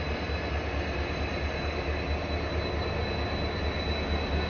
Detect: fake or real real